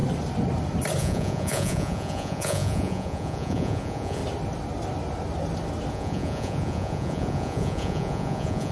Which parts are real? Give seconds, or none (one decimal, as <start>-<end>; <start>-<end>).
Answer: 0.0-1.0; 4.2-5.9